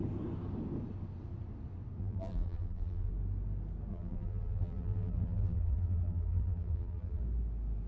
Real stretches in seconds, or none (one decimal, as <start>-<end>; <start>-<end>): 0.0-2.0; 3.1-3.9; 7.2-7.9